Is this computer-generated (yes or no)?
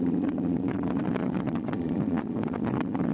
yes